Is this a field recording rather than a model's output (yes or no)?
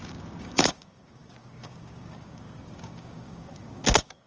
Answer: no